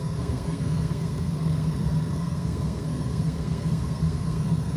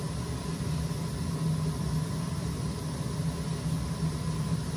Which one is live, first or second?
second